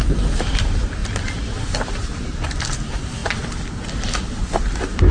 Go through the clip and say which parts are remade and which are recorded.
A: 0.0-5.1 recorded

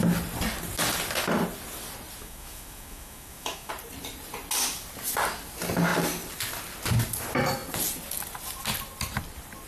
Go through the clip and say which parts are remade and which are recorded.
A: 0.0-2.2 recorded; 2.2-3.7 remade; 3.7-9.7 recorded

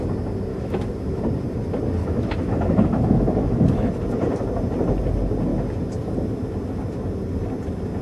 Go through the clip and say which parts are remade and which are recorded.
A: 0.0-0.5 recorded; 0.5-1.2 remade; 1.2-2.0 recorded; 2.0-3.9 remade; 3.9-8.0 recorded